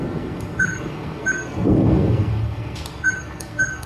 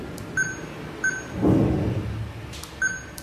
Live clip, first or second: second